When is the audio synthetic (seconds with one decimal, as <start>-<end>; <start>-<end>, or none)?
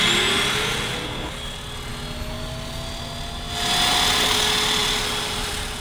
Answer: 4.8-5.8